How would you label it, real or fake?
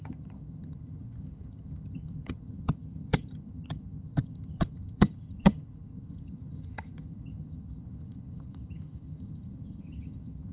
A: fake